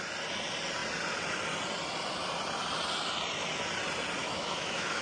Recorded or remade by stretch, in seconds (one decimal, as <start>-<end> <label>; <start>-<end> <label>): 0.0-4.2 recorded; 4.2-5.0 remade